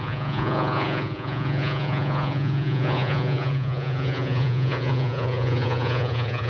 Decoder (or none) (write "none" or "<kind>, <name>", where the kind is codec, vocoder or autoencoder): vocoder, Vocos